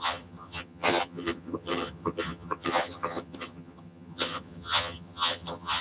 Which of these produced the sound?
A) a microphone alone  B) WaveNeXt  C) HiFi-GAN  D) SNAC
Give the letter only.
C